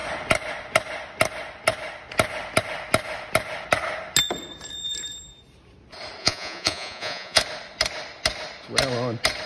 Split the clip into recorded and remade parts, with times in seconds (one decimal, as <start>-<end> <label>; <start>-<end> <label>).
0.0-6.2 recorded; 6.2-7.4 remade; 7.4-9.5 recorded